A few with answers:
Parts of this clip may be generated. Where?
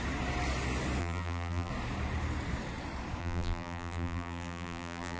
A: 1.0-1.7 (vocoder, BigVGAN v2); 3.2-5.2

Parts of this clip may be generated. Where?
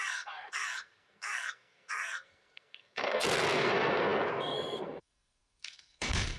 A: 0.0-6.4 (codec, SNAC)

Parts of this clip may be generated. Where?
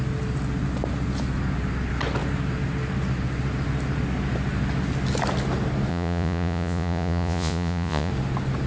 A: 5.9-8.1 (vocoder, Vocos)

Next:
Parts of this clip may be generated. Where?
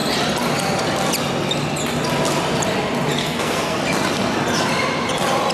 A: 3.2-3.8 (codec, SNAC)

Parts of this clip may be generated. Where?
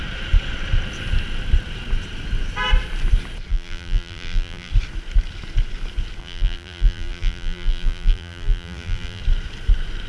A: 3.5-4.7 (vocoder, BigVGAN v2); 6.2-9.2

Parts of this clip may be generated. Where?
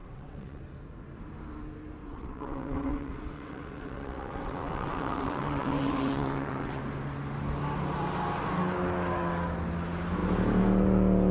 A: 0.0-0.6 (vocoder, WaveNeXt); 2.0-6.8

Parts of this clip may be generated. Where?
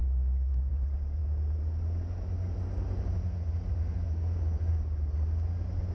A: 0.0-0.7 (autoencoder, DAC-VAE)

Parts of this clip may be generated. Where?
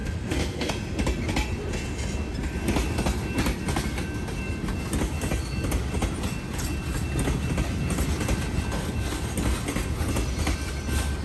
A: 0.0-0.7 (codec, SNAC)